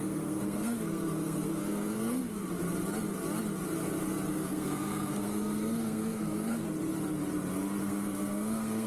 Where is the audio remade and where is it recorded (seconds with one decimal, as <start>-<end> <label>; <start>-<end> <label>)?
0.0-2.4 remade; 2.4-4.3 recorded; 4.3-6.7 remade; 6.7-7.8 recorded; 7.8-8.9 remade

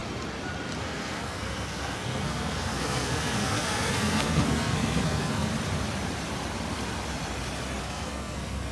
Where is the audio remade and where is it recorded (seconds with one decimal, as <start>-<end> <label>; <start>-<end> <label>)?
0.0-0.8 recorded; 0.8-5.5 remade; 5.5-7.8 recorded; 7.8-8.7 remade

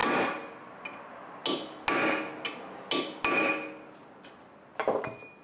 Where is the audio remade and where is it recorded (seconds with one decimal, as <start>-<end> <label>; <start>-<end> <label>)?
0.0-5.4 recorded

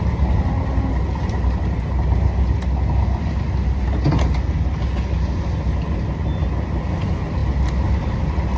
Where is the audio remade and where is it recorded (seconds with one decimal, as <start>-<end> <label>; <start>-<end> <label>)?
0.0-8.6 recorded